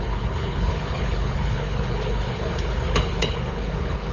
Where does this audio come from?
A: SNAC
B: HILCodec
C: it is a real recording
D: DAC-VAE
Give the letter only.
B